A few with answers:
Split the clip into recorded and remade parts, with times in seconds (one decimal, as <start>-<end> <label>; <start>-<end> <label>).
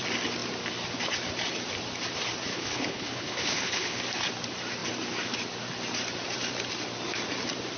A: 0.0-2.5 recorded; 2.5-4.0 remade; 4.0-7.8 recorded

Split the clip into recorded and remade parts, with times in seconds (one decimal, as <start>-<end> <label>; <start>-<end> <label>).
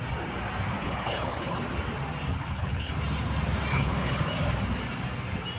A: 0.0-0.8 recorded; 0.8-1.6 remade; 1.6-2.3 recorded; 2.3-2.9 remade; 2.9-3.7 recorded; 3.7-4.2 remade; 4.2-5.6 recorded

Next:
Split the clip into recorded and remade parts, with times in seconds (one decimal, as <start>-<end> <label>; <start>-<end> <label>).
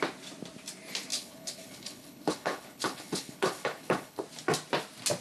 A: 0.0-1.1 recorded; 1.1-4.2 remade; 4.2-5.2 recorded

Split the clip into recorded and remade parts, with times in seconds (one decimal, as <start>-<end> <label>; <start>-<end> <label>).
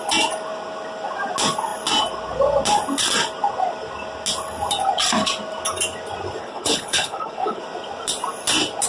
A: 0.0-6.4 recorded; 6.4-7.6 remade; 7.6-8.9 recorded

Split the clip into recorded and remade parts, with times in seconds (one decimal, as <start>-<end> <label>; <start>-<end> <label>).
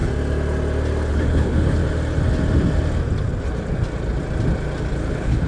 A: 0.0-1.1 recorded; 1.1-1.8 remade; 1.8-5.1 recorded; 5.1-5.5 remade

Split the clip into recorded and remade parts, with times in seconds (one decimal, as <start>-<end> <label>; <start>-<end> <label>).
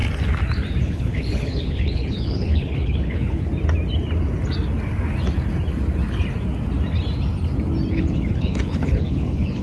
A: 0.0-0.8 recorded; 0.8-3.5 remade; 3.5-7.9 recorded; 7.9-9.6 remade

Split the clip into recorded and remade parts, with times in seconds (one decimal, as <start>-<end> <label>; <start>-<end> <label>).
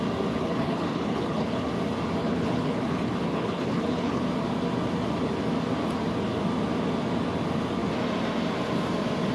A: 0.0-0.4 recorded; 0.4-1.7 remade; 1.7-2.2 recorded; 2.2-4.2 remade; 4.2-9.3 recorded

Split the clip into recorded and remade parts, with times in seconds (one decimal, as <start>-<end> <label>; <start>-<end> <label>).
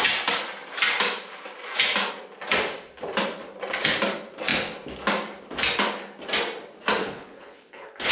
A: 0.0-7.0 recorded; 7.0-8.1 remade